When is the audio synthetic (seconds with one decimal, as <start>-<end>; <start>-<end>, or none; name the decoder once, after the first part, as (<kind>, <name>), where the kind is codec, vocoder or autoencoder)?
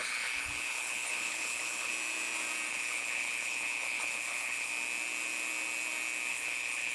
0.0-1.9 (codec, HILCodec); 2.7-4.7; 6.3-6.9